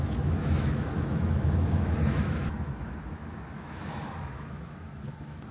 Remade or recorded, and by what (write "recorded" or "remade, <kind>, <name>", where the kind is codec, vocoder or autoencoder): remade, autoencoder, DAC-VAE